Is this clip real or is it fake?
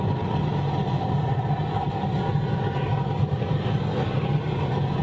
real